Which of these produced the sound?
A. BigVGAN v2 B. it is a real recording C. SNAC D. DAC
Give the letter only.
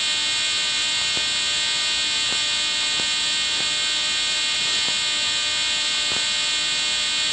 B